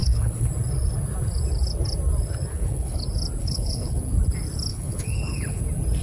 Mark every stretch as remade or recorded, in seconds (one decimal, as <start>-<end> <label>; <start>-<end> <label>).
0.0-0.5 remade; 0.5-2.5 recorded; 2.5-3.0 remade; 3.0-3.4 recorded; 3.4-4.0 remade; 4.0-4.7 recorded; 4.7-5.6 remade; 5.6-6.0 recorded